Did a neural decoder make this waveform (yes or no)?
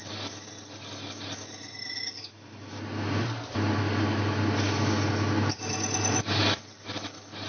no